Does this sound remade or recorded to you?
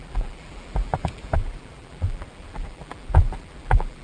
remade